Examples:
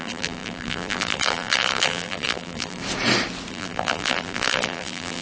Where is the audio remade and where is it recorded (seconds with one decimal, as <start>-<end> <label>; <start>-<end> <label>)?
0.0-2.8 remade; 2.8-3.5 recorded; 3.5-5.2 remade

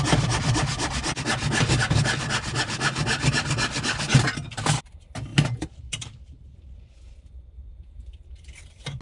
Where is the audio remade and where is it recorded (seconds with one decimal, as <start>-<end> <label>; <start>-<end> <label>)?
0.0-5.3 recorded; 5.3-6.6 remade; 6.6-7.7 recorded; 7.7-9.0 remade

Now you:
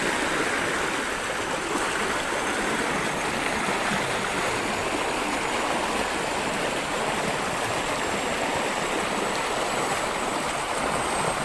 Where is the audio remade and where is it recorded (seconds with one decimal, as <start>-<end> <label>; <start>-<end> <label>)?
0.0-8.5 recorded; 8.5-9.1 remade; 9.1-11.4 recorded

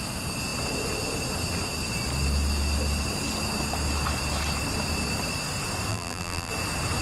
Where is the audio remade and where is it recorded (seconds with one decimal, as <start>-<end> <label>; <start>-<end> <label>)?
0.0-5.9 recorded; 5.9-6.5 remade; 6.5-7.0 recorded

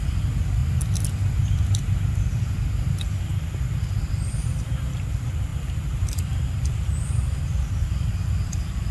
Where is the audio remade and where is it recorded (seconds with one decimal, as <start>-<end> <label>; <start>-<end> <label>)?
0.0-0.6 remade; 0.6-4.0 recorded; 4.0-8.9 remade